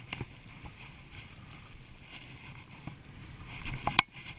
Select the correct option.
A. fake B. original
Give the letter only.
B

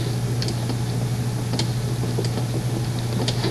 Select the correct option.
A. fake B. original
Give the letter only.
B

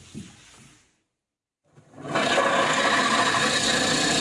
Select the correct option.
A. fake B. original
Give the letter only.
B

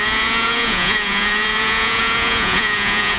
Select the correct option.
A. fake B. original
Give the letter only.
A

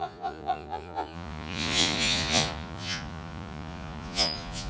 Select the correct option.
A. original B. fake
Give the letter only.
B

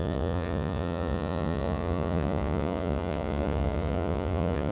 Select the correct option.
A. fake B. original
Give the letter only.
A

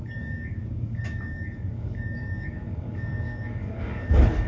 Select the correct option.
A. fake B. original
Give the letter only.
A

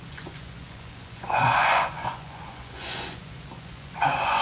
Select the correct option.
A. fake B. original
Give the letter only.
A